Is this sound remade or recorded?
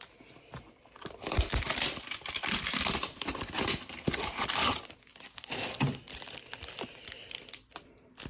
remade